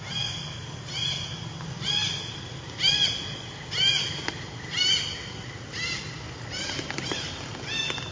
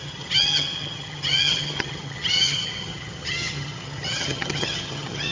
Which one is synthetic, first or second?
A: second